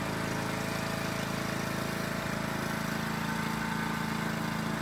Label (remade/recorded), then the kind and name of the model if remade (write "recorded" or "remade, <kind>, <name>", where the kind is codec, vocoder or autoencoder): recorded